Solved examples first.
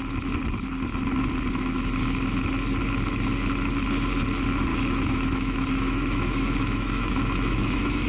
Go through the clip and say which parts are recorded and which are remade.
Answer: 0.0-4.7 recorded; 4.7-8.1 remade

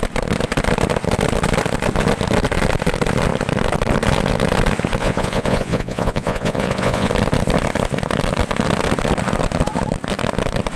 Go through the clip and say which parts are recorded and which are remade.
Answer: 0.0-5.0 recorded; 5.0-7.1 remade; 7.1-10.8 recorded